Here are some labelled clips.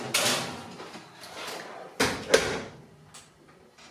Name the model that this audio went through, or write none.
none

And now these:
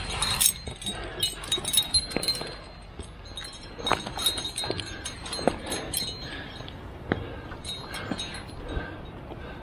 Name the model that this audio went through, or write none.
none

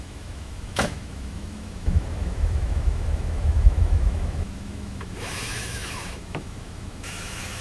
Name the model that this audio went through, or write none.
autoencoder, DAC-VAE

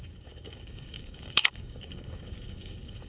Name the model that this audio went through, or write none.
codec, DAC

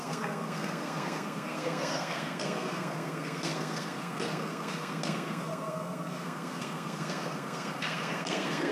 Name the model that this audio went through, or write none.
codec, SNAC